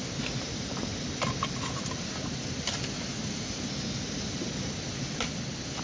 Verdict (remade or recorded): recorded